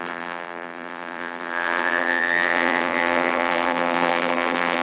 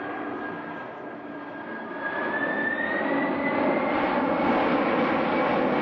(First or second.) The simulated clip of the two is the first